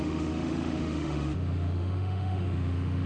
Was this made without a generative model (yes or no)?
no